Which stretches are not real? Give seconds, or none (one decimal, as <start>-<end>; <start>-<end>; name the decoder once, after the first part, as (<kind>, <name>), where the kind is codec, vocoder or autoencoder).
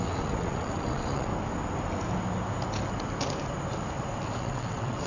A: 0.0-1.3 (vocoder, WaveNeXt); 4.4-5.1